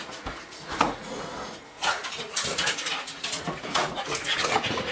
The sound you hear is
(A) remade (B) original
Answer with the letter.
A